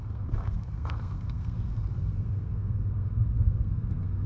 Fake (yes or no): yes